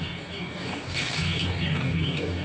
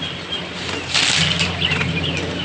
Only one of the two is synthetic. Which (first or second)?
first